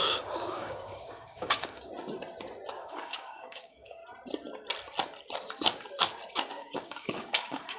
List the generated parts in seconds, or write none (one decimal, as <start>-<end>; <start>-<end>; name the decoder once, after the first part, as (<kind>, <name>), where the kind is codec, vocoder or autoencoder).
0.0-1.9 (codec, DAC); 2.7-4.0; 6.5-7.8